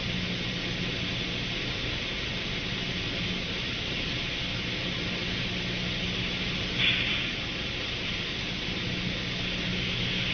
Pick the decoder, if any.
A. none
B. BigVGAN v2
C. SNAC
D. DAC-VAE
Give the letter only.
A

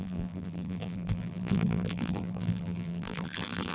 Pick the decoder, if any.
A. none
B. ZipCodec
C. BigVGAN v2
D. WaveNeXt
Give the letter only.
C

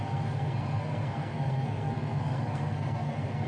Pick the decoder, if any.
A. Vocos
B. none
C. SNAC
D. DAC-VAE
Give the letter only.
C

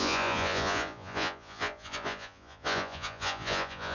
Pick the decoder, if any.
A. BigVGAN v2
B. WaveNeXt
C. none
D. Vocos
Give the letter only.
D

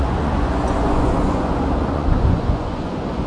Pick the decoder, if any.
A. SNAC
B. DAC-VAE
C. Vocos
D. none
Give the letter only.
C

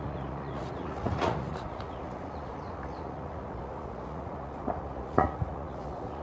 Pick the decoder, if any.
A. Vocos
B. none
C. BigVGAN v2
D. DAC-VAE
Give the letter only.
A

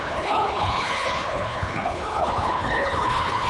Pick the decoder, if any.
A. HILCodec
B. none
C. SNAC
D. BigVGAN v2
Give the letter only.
A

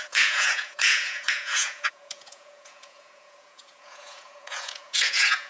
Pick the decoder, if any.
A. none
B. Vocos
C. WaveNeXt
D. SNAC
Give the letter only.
B